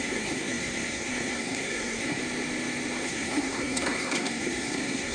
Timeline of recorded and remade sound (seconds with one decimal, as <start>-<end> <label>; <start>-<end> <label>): 0.0-2.2 remade; 2.2-3.0 recorded; 3.0-5.1 remade